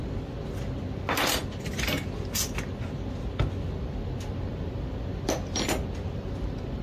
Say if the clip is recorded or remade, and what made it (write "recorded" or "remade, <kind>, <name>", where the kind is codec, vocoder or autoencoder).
recorded